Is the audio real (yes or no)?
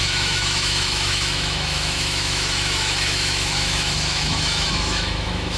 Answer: no